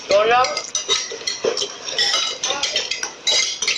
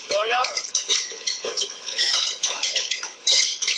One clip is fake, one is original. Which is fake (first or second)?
second